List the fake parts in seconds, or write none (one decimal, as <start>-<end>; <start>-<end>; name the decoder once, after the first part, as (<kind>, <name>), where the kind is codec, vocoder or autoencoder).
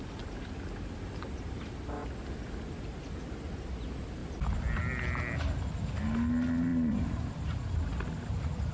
none